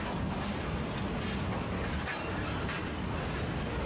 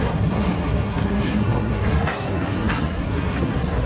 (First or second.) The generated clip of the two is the second